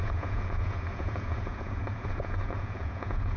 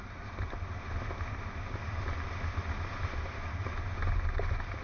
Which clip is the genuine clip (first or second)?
second